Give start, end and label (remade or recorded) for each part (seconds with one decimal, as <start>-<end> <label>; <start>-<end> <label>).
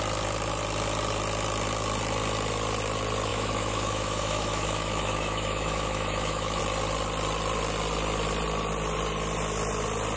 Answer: 0.0-3.3 recorded; 3.3-6.6 remade; 6.6-10.2 recorded